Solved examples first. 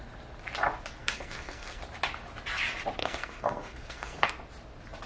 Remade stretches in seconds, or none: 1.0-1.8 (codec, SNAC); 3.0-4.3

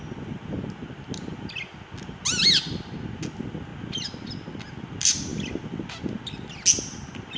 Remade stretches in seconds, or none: none